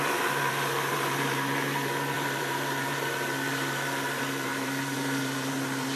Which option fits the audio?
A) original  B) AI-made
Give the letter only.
B